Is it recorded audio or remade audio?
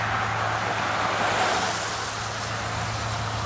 recorded